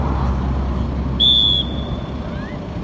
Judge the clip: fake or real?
real